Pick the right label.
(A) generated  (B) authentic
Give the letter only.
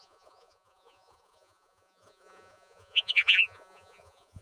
A